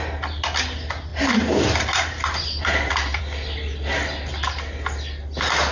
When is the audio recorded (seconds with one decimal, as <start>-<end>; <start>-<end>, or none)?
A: 0.0-1.1; 3.2-5.7